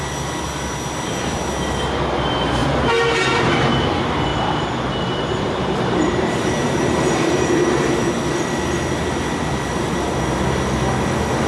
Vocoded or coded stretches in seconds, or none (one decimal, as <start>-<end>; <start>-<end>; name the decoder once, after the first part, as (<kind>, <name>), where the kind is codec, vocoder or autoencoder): 2.6-3.6 (vocoder, BigVGAN v2); 4.3-8.2